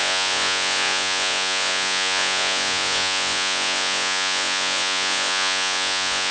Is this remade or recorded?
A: remade